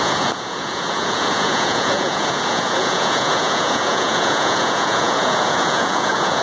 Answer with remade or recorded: remade